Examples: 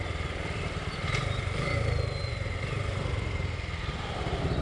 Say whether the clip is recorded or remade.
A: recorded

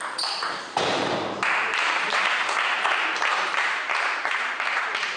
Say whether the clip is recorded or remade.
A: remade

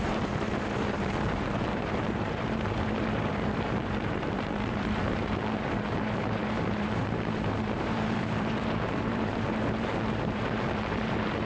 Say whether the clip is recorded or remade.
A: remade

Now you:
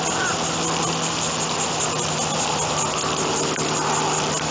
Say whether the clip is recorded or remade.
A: recorded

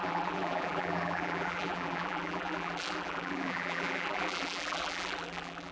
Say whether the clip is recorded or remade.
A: remade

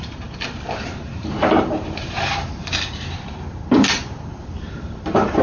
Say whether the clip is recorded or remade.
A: remade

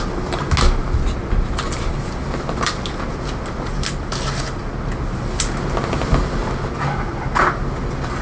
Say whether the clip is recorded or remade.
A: recorded